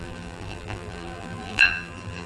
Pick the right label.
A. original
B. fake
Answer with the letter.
B